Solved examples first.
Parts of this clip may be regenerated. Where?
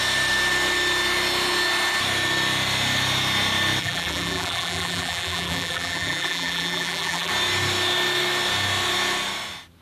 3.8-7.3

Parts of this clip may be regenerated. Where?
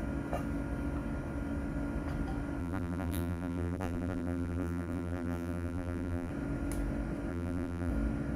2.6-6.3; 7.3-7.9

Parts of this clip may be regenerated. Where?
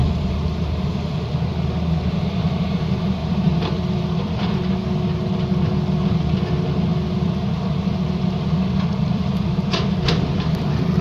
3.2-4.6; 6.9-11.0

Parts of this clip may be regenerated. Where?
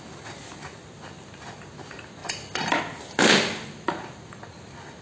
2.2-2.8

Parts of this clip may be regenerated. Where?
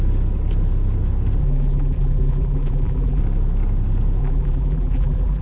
1.4-3.2; 4.2-5.4